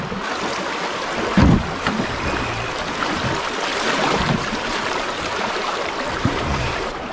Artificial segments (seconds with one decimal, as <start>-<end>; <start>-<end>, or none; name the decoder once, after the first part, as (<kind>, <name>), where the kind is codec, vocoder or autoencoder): 3.7-7.1 (vocoder, BigVGAN v2)